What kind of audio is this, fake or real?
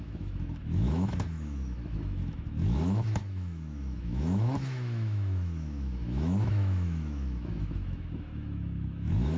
fake